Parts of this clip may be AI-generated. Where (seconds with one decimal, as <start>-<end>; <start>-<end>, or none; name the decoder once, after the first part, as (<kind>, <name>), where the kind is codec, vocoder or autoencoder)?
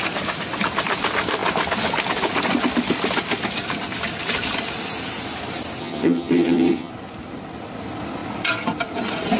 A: 5.8-6.9 (vocoder, HiFi-GAN)